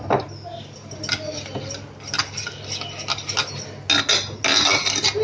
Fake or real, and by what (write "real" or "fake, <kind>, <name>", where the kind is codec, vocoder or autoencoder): real